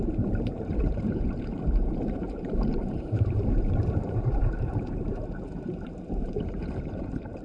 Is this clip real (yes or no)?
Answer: no